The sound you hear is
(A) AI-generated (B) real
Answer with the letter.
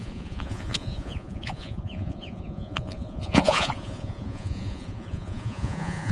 A